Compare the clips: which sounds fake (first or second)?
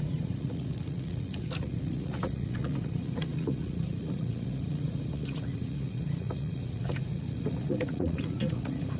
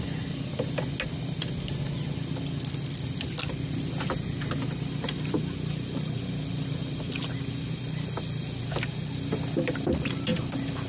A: first